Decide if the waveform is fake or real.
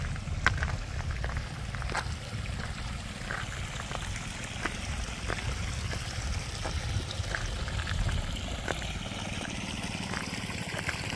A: real